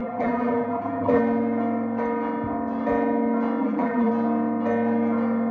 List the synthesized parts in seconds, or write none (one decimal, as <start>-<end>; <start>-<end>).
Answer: 0.0-1.2; 3.6-4.1